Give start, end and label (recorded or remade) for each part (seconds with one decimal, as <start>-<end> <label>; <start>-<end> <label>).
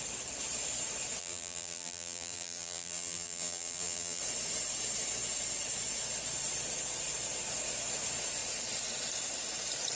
0.0-1.2 recorded; 1.2-4.2 remade; 4.2-10.0 recorded